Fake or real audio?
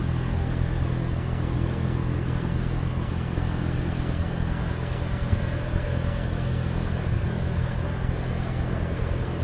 fake